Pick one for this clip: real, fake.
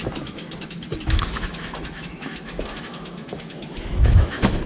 fake